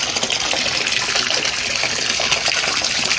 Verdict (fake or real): real